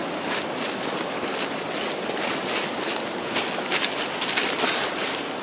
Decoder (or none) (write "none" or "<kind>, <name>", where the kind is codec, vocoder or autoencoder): none